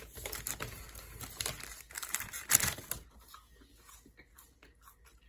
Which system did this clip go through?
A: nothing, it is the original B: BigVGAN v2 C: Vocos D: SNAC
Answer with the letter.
A